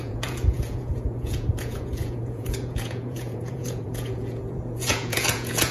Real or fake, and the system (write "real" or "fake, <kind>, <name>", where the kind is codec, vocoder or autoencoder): fake, vocoder, Vocos